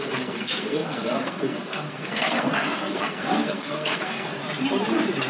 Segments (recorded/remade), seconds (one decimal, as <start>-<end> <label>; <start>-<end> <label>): 0.0-4.4 remade; 4.4-5.3 recorded